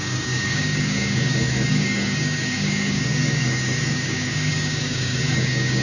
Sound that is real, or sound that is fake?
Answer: fake